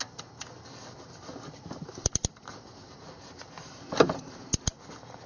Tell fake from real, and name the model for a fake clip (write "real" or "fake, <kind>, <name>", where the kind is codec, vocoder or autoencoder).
real